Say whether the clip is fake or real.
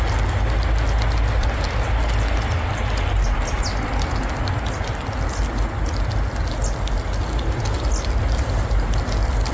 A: real